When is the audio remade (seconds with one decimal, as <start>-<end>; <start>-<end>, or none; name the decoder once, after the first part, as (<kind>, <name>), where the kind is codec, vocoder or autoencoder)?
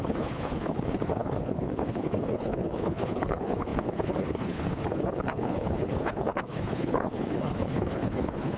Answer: 0.0-8.6 (codec, HILCodec)